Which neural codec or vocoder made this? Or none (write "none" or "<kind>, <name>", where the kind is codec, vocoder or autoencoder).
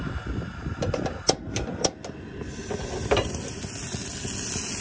none